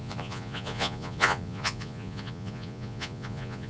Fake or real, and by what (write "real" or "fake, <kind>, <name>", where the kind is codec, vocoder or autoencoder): fake, vocoder, Vocos